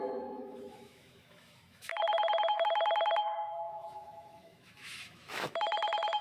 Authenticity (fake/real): fake